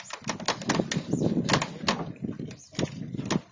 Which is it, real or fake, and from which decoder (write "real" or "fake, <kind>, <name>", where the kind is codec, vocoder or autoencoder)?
real